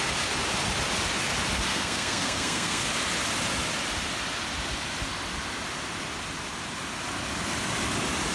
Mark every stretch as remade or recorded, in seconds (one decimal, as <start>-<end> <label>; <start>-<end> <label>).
0.0-1.7 recorded; 1.7-2.8 remade; 2.8-8.3 recorded